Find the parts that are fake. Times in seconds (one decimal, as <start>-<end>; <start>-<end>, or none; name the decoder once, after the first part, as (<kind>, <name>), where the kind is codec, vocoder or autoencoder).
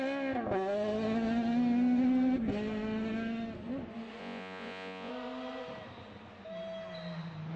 4.2-5.1 (vocoder, Vocos)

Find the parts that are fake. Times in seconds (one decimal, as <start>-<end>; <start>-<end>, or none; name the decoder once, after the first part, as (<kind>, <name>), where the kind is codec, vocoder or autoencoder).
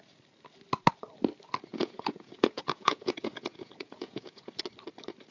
1.7-4.6 (vocoder, Vocos)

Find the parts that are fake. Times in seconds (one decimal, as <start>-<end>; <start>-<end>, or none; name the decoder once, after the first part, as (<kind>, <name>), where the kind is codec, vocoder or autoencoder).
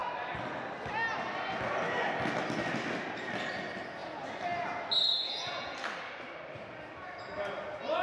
5.1-5.8 (vocoder, Vocos)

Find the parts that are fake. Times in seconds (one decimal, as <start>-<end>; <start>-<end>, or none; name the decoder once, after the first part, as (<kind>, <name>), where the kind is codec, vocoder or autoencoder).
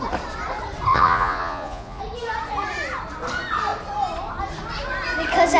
0.9-2.0 (vocoder, Vocos)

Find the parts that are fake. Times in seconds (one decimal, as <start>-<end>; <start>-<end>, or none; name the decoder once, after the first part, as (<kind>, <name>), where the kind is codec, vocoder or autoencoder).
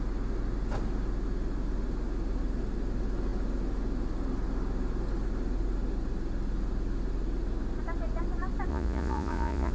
8.7-9.7 (vocoder, Vocos)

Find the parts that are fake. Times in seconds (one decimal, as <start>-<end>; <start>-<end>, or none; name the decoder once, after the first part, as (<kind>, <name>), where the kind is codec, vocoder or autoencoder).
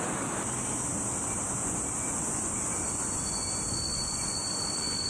1.6-5.1 (vocoder, Vocos)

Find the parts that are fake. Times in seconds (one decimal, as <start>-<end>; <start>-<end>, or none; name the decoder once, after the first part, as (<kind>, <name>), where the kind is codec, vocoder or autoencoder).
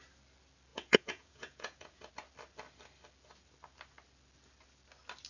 0.7-2.1 (vocoder, Vocos)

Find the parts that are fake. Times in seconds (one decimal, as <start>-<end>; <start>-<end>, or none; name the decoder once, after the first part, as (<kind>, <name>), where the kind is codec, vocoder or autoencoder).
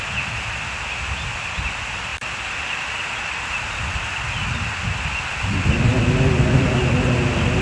none